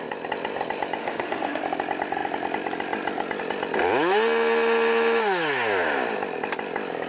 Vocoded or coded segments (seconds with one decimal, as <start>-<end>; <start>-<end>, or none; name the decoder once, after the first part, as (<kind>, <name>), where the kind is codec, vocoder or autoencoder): 1.0-1.6 (autoencoder, DAC-VAE)